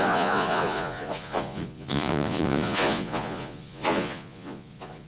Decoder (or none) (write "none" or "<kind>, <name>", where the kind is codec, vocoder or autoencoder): vocoder, Vocos